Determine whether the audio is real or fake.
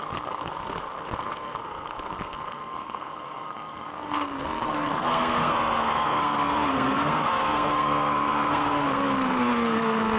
fake